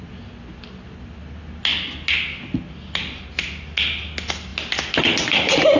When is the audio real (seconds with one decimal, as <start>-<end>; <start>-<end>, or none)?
0.0-5.8